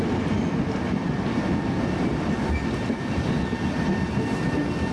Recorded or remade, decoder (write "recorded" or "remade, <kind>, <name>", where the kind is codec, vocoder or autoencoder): recorded